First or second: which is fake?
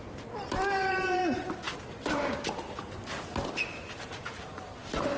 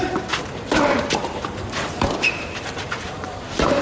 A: second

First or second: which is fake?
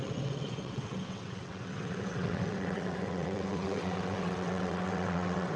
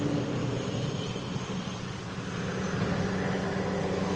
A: first